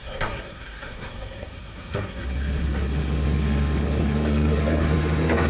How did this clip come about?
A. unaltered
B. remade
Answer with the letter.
B